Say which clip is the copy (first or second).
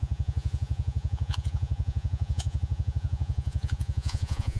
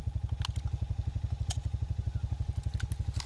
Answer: first